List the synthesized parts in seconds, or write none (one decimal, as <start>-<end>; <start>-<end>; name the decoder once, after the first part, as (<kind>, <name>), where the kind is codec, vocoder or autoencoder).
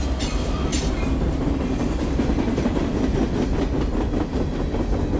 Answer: 0.7-2.6 (vocoder, BigVGAN v2)